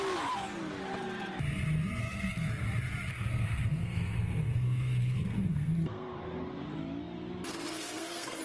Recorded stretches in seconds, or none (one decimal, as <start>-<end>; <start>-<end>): 0.0-2.0; 2.5-3.1; 6.1-7.5